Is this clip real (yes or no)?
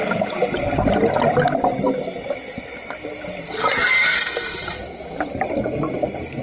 yes